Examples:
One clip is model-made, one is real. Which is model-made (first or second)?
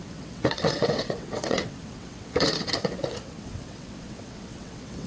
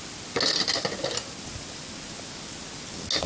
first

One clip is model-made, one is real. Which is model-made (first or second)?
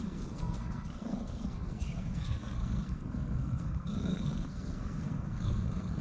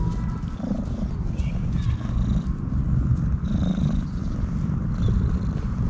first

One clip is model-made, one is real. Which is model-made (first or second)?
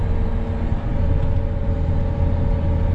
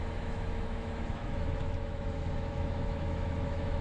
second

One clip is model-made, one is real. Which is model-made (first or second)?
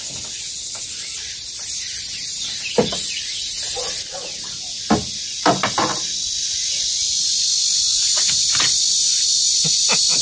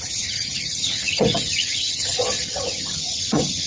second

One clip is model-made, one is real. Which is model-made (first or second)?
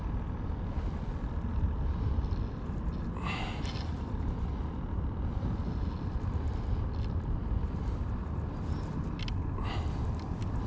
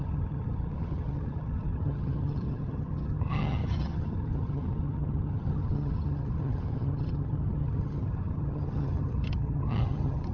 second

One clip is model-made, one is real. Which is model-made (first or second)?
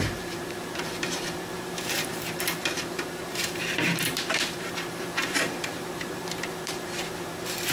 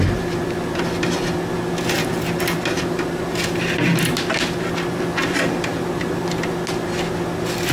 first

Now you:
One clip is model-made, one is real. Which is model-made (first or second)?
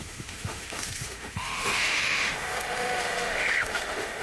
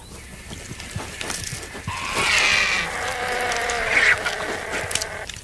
first